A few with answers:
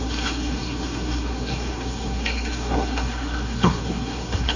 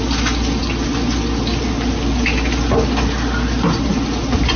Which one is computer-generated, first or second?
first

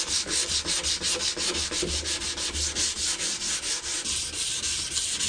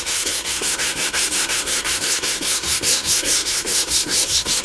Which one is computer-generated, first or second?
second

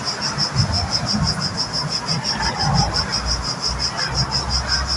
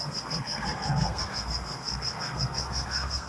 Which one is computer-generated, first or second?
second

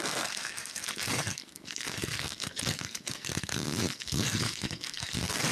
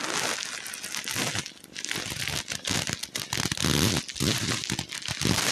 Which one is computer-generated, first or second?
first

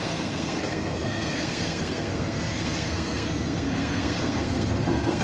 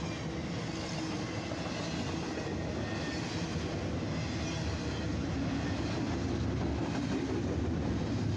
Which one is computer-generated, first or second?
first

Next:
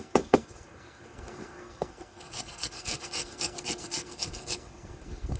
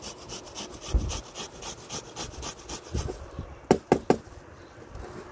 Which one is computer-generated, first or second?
first